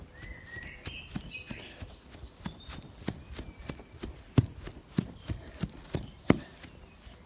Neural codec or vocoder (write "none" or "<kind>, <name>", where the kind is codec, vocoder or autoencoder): none